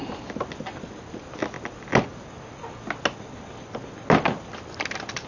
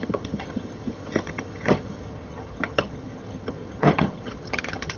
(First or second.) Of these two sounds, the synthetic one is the second